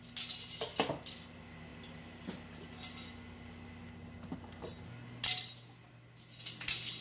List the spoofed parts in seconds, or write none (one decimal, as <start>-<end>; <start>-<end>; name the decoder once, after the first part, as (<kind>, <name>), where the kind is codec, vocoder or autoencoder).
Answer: none